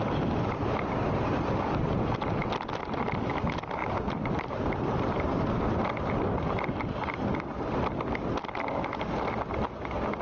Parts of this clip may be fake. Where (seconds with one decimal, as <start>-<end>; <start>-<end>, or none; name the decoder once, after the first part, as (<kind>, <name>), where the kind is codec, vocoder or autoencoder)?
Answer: 3.8-5.2 (vocoder, BigVGAN v2)

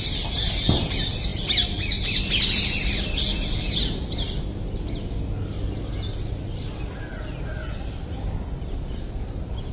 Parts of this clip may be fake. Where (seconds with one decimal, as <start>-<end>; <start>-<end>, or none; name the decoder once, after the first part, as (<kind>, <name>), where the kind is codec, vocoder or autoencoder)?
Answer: none

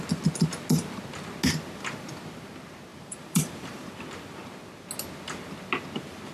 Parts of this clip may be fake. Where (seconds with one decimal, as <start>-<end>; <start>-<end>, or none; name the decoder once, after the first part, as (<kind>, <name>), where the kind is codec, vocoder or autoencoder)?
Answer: 2.9-3.9 (vocoder, BigVGAN v2)

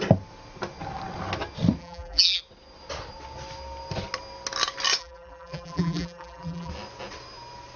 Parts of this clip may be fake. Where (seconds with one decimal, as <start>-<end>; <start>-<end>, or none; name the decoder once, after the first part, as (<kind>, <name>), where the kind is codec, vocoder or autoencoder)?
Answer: 1.8-2.4 (vocoder, BigVGAN v2); 5.0-6.7

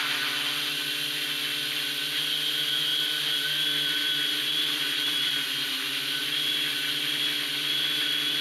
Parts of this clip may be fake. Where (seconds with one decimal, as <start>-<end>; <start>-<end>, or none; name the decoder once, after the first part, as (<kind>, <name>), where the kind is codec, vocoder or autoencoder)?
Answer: none

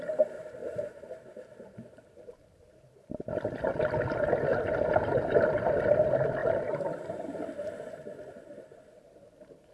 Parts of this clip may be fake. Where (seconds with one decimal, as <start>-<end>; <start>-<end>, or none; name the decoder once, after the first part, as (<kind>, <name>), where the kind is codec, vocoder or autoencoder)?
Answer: 0.6-3.3 (vocoder, BigVGAN v2); 4.5-5.4; 6.4-8.5

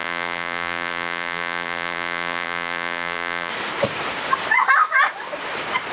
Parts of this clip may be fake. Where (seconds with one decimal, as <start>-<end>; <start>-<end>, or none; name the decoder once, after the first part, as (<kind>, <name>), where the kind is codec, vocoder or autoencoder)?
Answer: 0.0-3.5 (vocoder, BigVGAN v2)

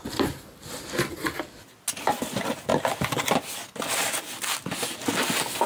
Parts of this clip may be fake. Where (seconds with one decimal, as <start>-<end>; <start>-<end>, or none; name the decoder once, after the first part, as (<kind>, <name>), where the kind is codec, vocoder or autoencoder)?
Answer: none